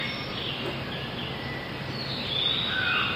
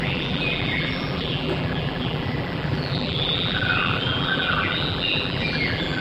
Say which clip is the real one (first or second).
first